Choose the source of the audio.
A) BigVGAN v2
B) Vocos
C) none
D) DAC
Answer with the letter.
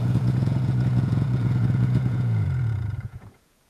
B